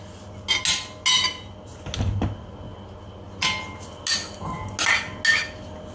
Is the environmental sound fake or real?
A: real